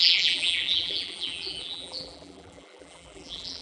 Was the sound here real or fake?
fake